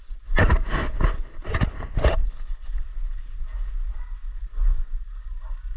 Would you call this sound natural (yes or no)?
yes